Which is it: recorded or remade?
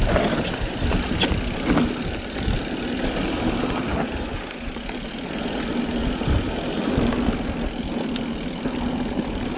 recorded